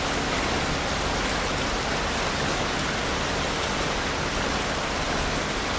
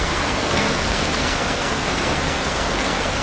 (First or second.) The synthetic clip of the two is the second